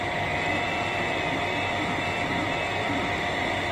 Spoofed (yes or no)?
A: no